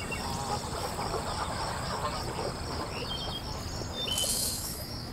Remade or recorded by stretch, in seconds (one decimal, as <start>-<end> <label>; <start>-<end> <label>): 0.0-4.3 recorded; 4.3-5.1 remade